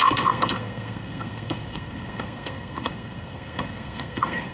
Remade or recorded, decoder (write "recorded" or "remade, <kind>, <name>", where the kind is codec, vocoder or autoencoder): remade, codec, SNAC